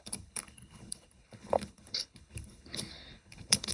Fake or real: fake